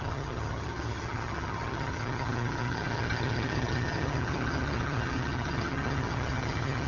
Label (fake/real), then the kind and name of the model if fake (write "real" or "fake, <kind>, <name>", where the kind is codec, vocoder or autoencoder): fake, vocoder, HiFi-GAN